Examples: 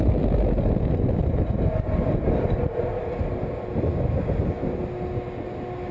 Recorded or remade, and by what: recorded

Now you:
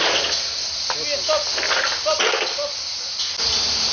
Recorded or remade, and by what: recorded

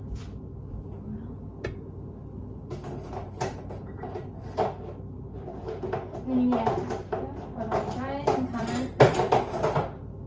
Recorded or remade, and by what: recorded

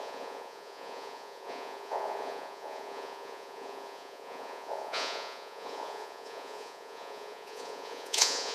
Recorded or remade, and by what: remade, vocoder, Vocos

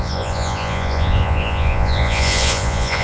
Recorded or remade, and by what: remade, vocoder, Vocos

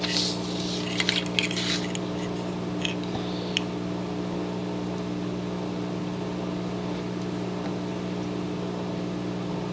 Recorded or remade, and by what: recorded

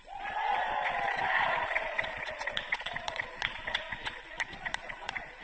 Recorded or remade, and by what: remade, vocoder, Vocos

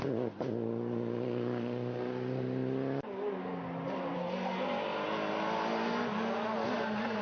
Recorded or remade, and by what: recorded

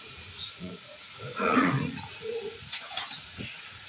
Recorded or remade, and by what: remade, vocoder, Vocos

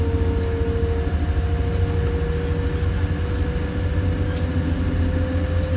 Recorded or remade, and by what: recorded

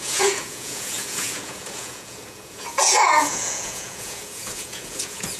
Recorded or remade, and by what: remade, vocoder, Vocos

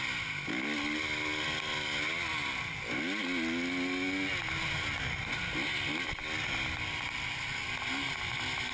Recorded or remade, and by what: recorded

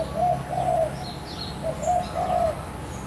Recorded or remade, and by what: recorded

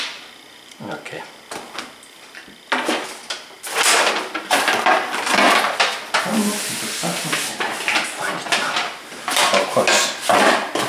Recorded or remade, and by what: recorded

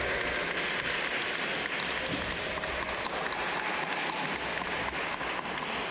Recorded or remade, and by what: recorded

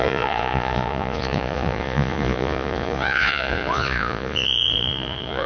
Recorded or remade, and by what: remade, vocoder, Vocos